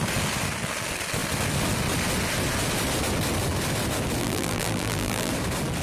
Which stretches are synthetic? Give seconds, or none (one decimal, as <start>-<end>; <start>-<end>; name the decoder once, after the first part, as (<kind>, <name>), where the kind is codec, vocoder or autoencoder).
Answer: 4.2-5.3 (vocoder, BigVGAN v2)